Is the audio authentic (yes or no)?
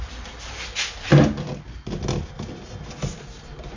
yes